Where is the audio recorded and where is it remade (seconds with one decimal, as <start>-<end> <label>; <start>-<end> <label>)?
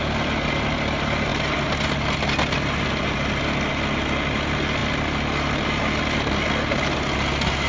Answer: 0.0-7.7 recorded